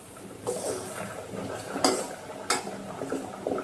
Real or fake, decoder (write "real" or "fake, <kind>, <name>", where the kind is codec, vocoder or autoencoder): real